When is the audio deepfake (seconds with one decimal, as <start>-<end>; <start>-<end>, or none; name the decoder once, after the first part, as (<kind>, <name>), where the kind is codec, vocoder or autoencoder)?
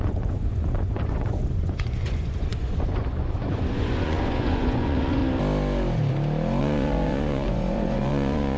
0.0-5.2 (vocoder, Vocos); 6.6-8.6